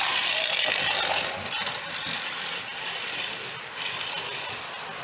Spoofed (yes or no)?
no